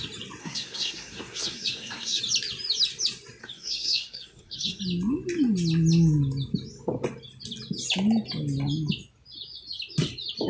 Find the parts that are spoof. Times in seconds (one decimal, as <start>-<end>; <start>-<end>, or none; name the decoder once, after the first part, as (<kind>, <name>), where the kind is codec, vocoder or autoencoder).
0.4-2.2 (codec, SNAC); 3.4-4.8

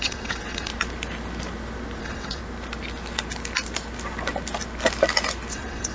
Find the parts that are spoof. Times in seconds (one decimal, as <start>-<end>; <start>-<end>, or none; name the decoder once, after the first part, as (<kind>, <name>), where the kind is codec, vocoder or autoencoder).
0.0-0.7 (vocoder, WaveNeXt); 2.0-2.4; 5.5-5.9